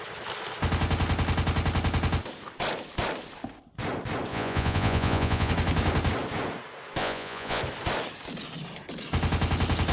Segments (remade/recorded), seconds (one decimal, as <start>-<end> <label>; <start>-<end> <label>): 0.0-4.3 recorded; 4.3-5.5 remade; 5.5-7.0 recorded; 7.0-7.6 remade; 7.6-9.9 recorded